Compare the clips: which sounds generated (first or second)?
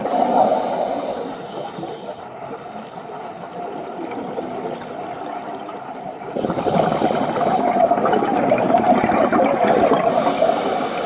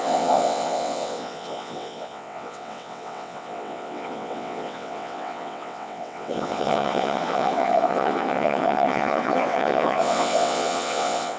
second